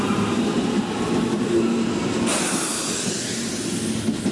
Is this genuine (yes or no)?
yes